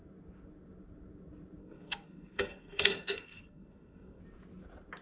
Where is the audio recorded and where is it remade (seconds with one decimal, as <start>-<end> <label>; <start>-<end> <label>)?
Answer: 0.0-1.6 recorded; 1.6-4.2 remade; 4.2-5.0 recorded